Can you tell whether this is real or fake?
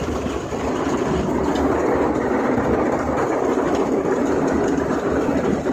real